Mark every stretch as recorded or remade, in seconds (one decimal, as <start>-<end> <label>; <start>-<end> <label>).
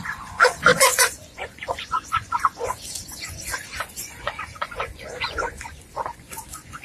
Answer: 0.0-6.8 remade